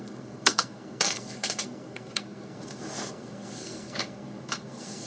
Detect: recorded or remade remade